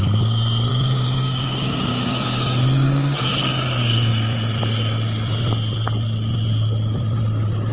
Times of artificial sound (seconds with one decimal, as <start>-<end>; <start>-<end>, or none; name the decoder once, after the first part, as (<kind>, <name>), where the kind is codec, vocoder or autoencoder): 0.7-4.1 (codec, DAC)